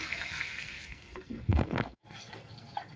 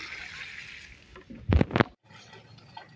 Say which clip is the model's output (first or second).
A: first